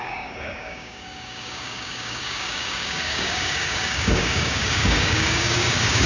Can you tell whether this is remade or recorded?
remade